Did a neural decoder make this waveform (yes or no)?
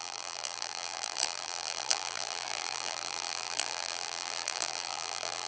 yes